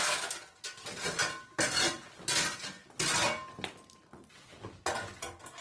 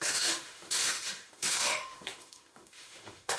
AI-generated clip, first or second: second